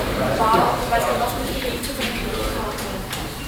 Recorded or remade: remade